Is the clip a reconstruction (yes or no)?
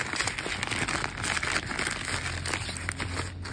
no